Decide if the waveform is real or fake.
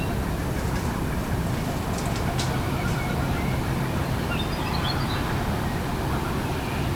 real